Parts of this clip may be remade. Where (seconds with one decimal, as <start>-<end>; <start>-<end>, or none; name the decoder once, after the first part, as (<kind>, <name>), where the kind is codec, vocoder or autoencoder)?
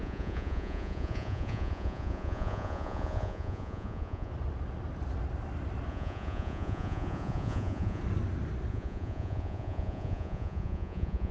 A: 0.0-4.3 (vocoder, Vocos); 5.9-8.0; 8.7-11.3